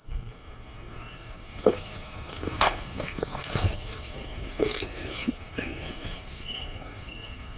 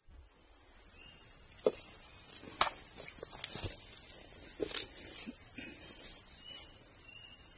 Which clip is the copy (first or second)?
first